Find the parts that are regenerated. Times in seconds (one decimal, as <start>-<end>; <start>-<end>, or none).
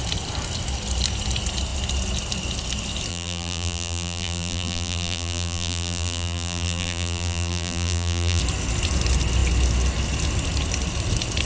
3.1-8.4